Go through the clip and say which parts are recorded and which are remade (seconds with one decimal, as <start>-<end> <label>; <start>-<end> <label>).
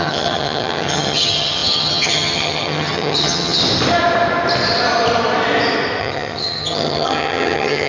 0.0-3.6 remade; 3.6-6.0 recorded; 6.0-7.9 remade